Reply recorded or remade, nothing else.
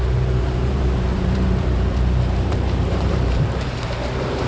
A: remade